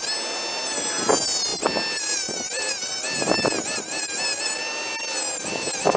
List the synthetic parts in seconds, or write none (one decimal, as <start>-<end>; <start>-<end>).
none